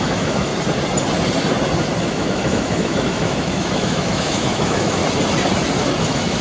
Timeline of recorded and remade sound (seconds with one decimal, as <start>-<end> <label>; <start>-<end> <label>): 0.0-0.5 remade; 0.5-2.0 recorded; 2.0-5.0 remade; 5.0-6.0 recorded; 6.0-6.4 remade